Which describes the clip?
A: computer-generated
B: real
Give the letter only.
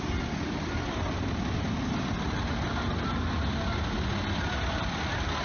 B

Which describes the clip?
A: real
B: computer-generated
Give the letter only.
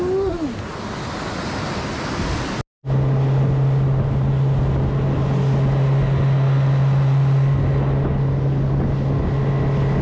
A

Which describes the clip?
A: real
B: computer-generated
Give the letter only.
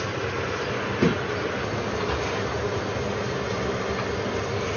A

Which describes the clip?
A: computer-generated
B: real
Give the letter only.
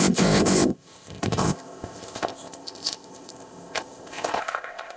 A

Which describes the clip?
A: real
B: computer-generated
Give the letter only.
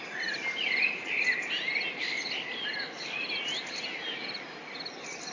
A